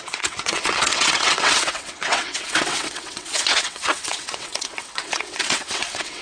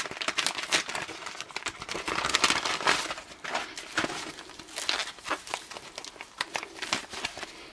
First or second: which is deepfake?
first